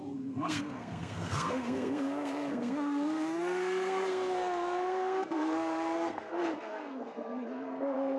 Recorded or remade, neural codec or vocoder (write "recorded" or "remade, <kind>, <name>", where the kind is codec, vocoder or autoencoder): remade, codec, SNAC